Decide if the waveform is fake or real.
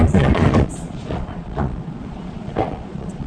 fake